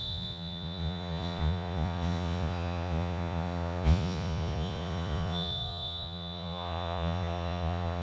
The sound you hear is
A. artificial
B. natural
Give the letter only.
A